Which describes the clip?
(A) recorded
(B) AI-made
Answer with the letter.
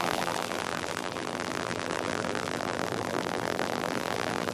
B